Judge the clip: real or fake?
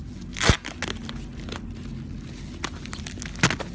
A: real